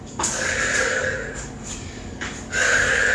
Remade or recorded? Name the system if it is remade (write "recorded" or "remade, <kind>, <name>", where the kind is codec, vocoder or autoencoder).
remade, codec, DAC